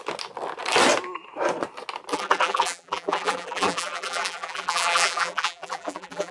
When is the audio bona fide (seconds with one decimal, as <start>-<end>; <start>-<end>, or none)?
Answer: 0.0-2.1